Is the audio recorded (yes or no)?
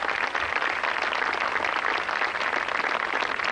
yes